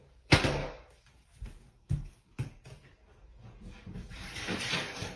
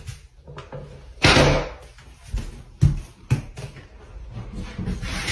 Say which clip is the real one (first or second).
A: second